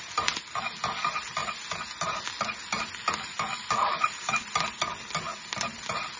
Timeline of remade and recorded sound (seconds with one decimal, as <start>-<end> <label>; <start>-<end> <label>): 0.0-6.2 recorded